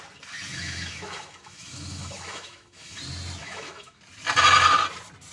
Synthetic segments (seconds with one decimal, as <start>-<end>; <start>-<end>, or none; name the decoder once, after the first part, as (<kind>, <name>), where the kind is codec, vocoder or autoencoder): 0.5-3.0 (autoencoder, DAC-VAE); 3.4-4.0